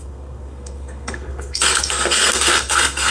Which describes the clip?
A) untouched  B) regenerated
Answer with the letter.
B